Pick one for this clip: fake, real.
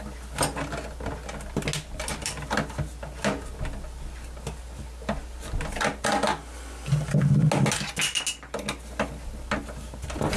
real